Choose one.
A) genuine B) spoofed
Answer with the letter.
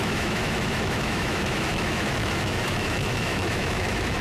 B